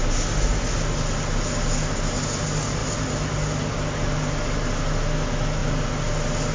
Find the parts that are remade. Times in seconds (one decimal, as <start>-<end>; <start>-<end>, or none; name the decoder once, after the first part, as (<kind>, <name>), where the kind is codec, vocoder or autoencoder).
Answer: none